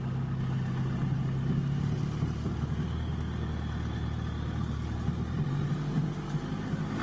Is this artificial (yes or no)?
no